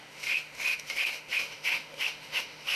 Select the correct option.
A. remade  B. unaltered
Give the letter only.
A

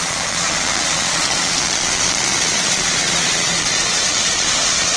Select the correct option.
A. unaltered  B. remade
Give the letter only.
B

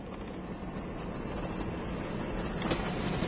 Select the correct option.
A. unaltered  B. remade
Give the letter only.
A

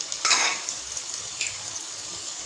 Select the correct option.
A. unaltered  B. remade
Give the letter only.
B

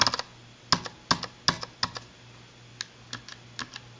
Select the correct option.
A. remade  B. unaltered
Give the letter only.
B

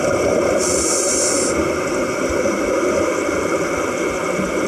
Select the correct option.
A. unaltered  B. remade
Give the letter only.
A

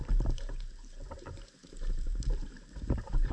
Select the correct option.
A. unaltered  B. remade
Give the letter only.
B